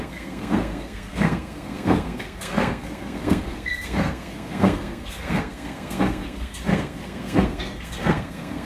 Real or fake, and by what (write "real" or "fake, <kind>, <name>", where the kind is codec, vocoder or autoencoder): fake, codec, SNAC